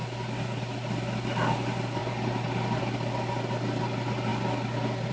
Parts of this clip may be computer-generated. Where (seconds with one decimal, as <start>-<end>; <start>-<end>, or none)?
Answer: none